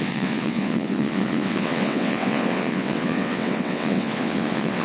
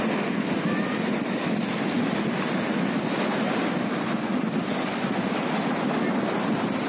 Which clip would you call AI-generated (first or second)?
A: first